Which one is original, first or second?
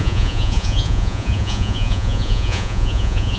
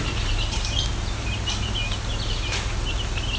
second